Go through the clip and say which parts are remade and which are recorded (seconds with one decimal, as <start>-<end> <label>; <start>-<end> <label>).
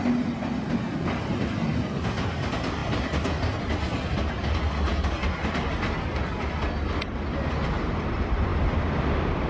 0.0-9.5 recorded